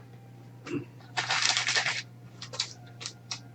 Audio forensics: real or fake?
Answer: real